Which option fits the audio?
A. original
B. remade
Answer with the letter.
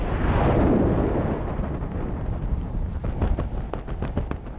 A